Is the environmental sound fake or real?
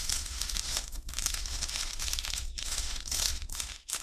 fake